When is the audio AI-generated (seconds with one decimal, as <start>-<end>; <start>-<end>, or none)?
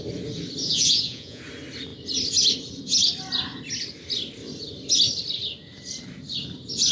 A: 0.6-1.4